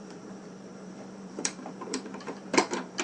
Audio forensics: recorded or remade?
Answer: remade